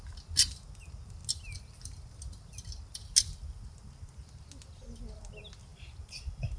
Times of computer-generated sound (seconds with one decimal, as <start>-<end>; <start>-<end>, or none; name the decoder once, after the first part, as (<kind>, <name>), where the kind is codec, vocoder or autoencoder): none